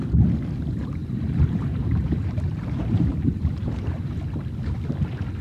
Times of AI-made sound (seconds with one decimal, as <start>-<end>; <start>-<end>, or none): 1.0-4.2